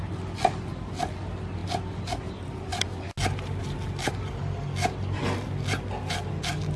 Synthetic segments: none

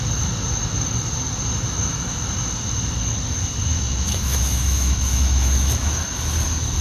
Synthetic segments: 3.6-5.9 (autoencoder, DAC-VAE)

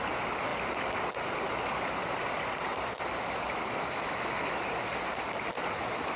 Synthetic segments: none

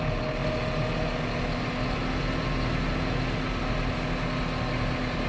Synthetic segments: none